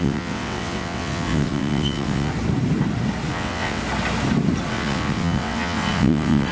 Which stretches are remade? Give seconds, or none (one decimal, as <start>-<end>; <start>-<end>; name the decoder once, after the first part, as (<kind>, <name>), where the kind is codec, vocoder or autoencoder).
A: 0.0-2.3 (vocoder, WaveNeXt); 3.3-3.8; 4.7-6.5